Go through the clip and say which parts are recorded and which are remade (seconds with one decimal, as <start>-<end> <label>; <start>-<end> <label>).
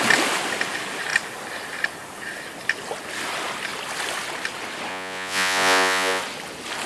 0.0-4.9 recorded; 4.9-6.2 remade; 6.2-6.9 recorded